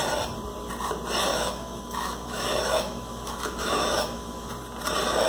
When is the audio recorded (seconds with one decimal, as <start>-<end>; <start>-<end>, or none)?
0.0-1.3; 4.5-5.3